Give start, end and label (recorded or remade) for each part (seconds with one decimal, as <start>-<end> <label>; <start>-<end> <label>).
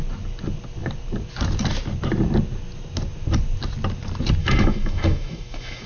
0.0-4.4 recorded; 4.4-5.9 remade